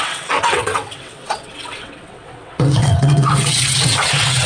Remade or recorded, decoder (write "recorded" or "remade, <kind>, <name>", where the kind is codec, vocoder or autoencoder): remade, vocoder, WaveNeXt